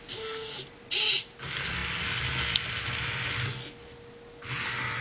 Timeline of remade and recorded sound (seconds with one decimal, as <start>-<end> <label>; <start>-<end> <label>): 0.0-5.0 recorded